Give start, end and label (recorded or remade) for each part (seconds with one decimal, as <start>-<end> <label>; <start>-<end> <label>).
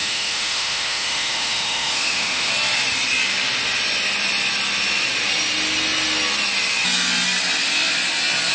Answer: 0.0-2.5 remade; 2.5-8.5 recorded